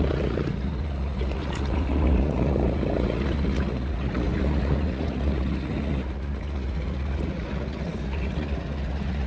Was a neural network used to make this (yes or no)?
yes